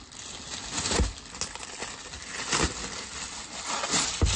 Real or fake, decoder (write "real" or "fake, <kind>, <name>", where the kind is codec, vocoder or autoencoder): real